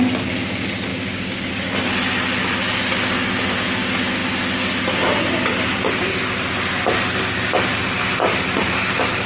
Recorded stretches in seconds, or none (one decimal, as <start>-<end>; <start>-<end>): 0.0-0.9; 1.5-9.3